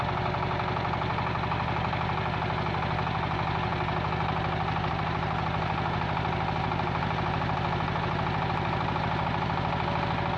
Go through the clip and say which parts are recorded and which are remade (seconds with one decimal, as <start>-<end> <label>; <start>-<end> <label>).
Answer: 0.0-10.4 recorded